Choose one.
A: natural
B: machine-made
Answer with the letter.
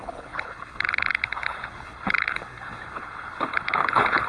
B